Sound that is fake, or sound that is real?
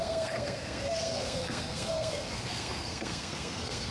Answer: fake